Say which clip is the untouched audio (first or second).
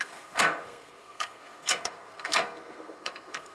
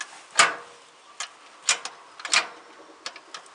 second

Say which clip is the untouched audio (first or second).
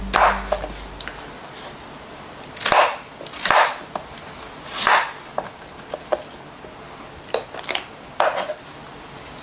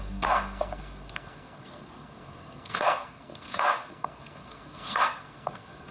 first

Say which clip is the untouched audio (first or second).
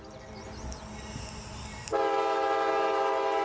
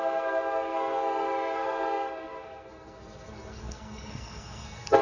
first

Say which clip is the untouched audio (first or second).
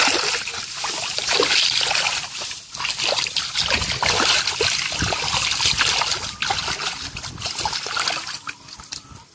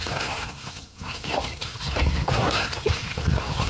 first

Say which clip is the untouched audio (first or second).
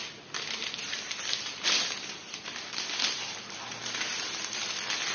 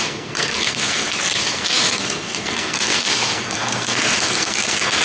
first